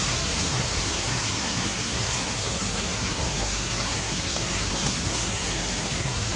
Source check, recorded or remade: remade